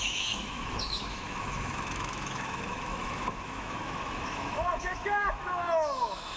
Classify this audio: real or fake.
fake